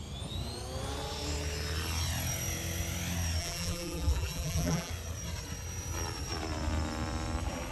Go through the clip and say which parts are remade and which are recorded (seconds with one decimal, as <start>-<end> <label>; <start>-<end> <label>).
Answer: 0.0-3.4 recorded; 3.4-4.9 remade; 4.9-7.7 recorded